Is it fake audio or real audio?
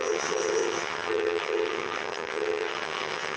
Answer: fake